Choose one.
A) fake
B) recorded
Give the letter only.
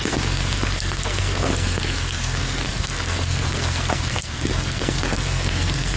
A